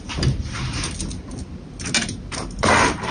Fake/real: real